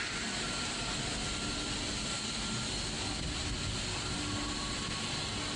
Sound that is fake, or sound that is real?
real